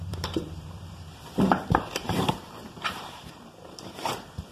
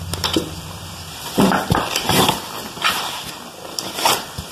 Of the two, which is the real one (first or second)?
second